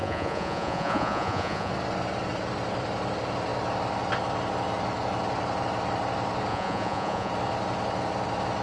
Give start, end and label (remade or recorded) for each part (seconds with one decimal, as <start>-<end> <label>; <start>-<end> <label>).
0.0-1.7 remade; 1.7-6.5 recorded; 6.5-7.3 remade; 7.3-8.6 recorded